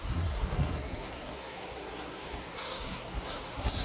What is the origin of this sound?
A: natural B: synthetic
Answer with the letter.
B